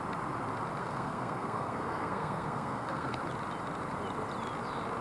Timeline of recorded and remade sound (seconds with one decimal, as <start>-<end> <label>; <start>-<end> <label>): 0.0-0.8 recorded; 0.8-3.2 remade; 3.2-5.0 recorded